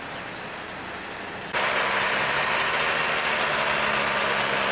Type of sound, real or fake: real